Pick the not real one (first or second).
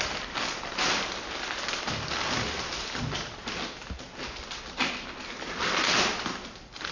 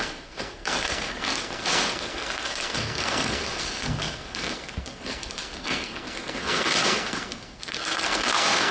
second